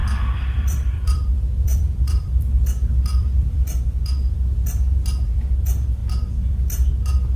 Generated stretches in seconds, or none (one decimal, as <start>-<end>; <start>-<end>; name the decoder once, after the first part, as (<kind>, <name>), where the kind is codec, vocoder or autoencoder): 0.0-2.6 (vocoder, BigVGAN v2); 3.1-3.8